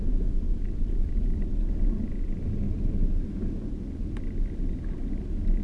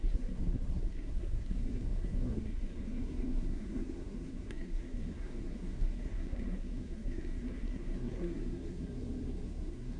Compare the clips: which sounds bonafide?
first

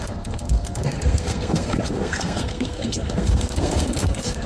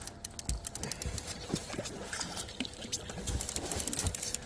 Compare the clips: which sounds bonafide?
second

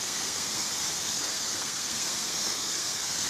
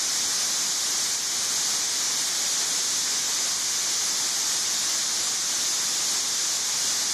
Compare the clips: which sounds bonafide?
second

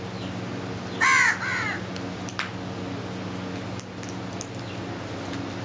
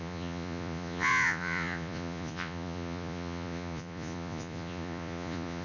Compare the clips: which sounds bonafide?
first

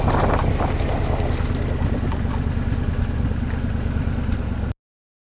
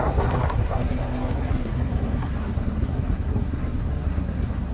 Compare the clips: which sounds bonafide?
first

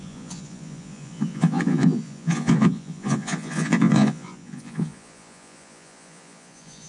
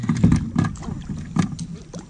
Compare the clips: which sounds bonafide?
second